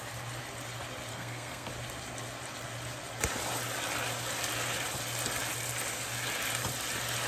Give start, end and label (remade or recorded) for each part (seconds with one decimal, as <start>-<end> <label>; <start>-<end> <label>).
0.0-1.1 recorded; 1.1-1.7 remade; 1.7-7.3 recorded